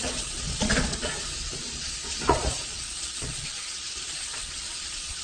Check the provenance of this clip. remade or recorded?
remade